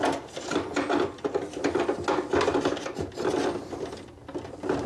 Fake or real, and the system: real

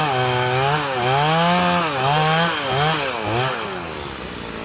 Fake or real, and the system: real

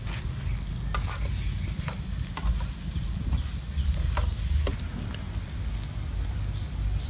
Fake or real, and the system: real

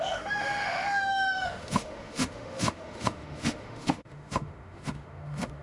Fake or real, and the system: fake, autoencoder, DAC-VAE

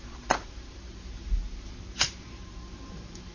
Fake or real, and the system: fake, vocoder, BigVGAN v2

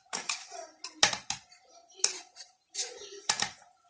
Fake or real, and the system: fake, vocoder, BigVGAN v2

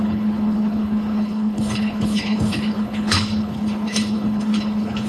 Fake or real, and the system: fake, codec, HILCodec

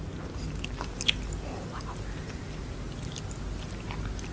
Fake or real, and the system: real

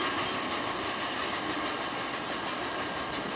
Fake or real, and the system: real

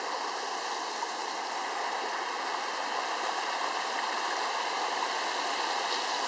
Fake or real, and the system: real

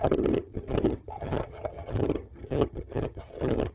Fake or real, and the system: fake, vocoder, HiFi-GAN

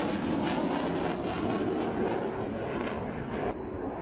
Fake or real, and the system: real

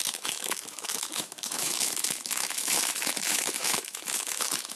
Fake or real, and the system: fake, autoencoder, DAC-VAE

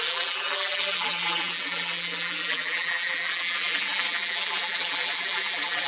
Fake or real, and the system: fake, vocoder, BigVGAN v2